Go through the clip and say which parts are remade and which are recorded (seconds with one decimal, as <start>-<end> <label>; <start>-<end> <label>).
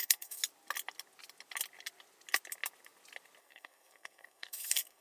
0.0-0.4 remade; 0.4-3.4 recorded; 3.4-5.0 remade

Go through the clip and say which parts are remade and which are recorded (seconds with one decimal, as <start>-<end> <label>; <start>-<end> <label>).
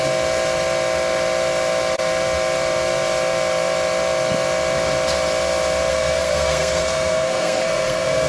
0.0-5.9 recorded; 5.9-8.3 remade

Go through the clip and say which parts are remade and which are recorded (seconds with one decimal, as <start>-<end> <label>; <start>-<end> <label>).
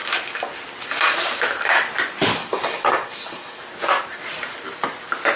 0.0-2.4 recorded; 2.4-3.6 remade; 3.6-5.4 recorded